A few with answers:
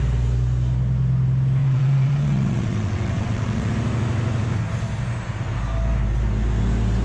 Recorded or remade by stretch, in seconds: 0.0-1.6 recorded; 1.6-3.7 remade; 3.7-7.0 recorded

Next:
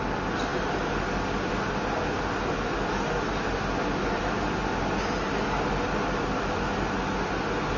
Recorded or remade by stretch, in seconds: 0.0-7.8 recorded

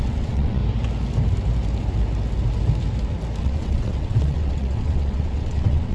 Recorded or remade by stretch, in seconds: 0.0-0.6 remade; 0.6-3.4 recorded; 3.4-5.9 remade

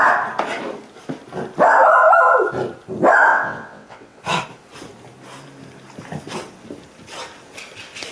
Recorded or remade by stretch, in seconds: 0.0-3.3 recorded; 3.3-4.2 remade; 4.2-8.1 recorded

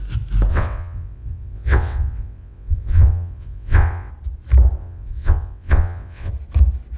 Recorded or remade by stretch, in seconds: 0.0-0.5 recorded; 0.5-4.1 remade; 4.1-4.8 recorded; 4.8-6.3 remade; 6.3-7.0 recorded

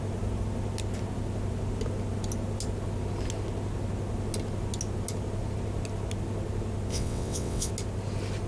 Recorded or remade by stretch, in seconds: 0.0-6.9 recorded; 6.9-7.7 remade; 7.7-8.5 recorded